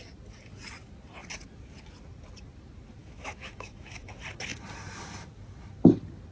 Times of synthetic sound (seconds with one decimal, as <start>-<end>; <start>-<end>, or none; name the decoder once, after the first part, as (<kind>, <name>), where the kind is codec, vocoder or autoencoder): 3.0-4.1 (autoencoder, DAC-VAE)